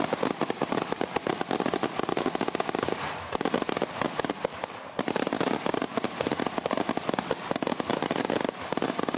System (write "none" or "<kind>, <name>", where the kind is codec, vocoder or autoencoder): vocoder, BigVGAN v2